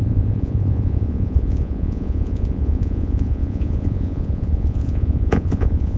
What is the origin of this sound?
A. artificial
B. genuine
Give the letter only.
A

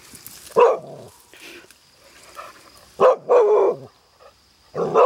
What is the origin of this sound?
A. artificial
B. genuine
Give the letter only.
B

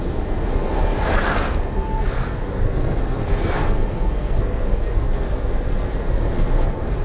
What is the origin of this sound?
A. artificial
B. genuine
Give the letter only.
A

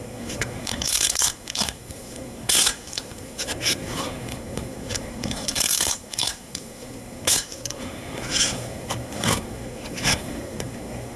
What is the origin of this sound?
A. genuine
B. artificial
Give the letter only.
B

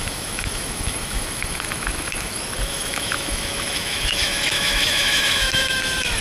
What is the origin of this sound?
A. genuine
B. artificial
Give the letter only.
B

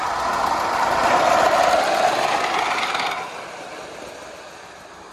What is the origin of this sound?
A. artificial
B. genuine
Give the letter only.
B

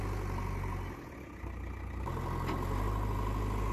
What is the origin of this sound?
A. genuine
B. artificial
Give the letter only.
A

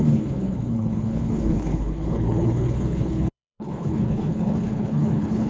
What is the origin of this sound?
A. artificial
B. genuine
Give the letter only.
A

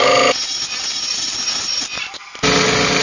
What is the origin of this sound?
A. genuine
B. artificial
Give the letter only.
A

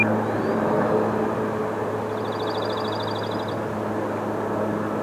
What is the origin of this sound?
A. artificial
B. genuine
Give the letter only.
B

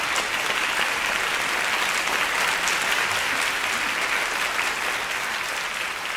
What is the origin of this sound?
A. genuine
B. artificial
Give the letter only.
A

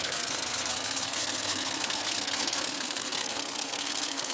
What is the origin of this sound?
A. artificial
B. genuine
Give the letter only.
A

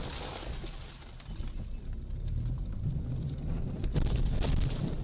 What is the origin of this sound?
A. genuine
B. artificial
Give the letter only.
A